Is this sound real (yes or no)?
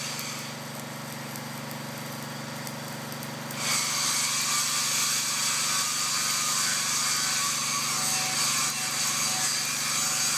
yes